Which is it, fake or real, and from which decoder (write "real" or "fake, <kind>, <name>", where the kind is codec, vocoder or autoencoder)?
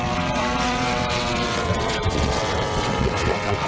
fake, vocoder, WaveNeXt